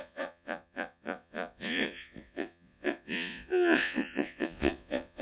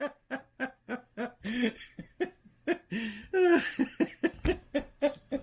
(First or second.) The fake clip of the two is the first